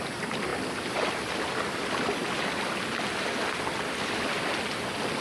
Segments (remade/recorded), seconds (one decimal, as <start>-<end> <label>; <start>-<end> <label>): 0.0-5.2 recorded